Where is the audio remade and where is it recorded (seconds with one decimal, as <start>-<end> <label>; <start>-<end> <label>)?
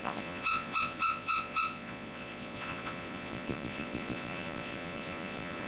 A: 0.0-5.7 remade